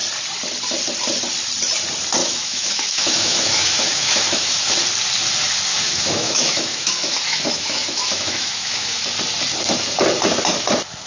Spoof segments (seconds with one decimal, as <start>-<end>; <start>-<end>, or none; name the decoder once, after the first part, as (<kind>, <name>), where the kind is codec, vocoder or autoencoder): 2.2-4.6 (autoencoder, DAC-VAE); 5.7-9.0